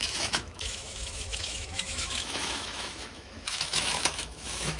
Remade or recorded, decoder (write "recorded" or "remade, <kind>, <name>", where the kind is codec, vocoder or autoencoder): remade, autoencoder, DAC-VAE